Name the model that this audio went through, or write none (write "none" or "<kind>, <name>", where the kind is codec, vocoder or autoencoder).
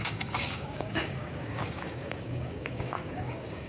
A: codec, DAC